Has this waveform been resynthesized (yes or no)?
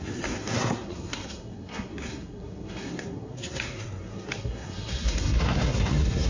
yes